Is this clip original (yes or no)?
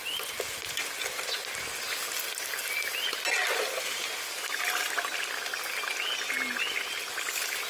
yes